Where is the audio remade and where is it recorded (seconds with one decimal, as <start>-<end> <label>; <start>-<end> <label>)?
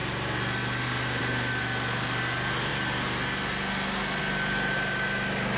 0.0-5.6 recorded